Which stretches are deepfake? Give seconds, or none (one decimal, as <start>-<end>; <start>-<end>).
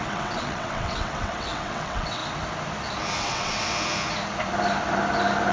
0.0-2.2; 3.2-3.7